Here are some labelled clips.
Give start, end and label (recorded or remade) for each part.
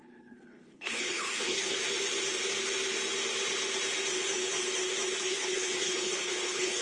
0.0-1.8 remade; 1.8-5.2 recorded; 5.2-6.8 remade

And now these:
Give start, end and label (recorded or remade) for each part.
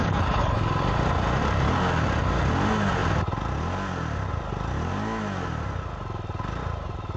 0.0-0.6 remade; 0.6-7.2 recorded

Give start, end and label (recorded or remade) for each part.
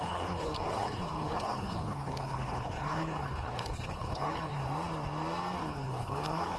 0.0-4.6 remade; 4.6-5.6 recorded; 5.6-6.6 remade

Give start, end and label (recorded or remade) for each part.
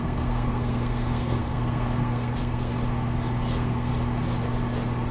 0.0-2.7 remade; 2.7-3.5 recorded; 3.5-3.9 remade; 3.9-5.1 recorded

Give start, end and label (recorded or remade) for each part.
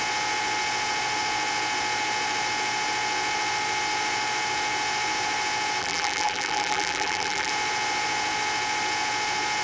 0.0-5.8 recorded; 5.8-7.5 remade; 7.5-9.6 recorded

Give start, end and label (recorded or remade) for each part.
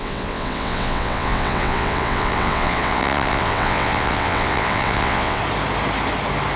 0.0-5.4 remade; 5.4-6.6 recorded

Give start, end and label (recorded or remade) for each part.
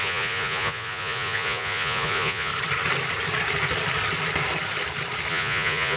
0.0-2.5 remade; 2.5-5.3 recorded; 5.3-6.0 remade